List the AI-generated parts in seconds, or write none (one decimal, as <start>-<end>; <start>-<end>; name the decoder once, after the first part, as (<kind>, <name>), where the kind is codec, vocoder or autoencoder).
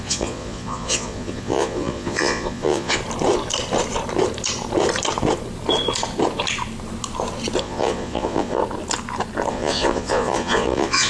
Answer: 0.0-3.0 (vocoder, Vocos); 7.6-8.6; 9.5-11.1